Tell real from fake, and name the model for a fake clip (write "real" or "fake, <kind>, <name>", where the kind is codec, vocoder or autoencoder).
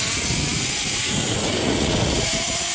fake, vocoder, Vocos